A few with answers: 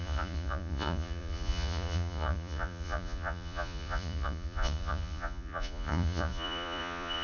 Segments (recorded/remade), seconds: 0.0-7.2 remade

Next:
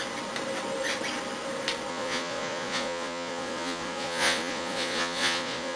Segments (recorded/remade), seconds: 0.0-1.9 recorded; 1.9-5.8 remade